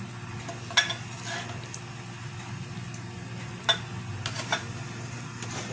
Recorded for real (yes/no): yes